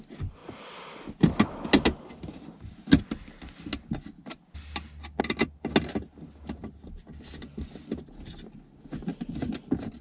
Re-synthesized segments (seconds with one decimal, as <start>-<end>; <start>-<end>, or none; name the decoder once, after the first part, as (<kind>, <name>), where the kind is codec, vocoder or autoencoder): none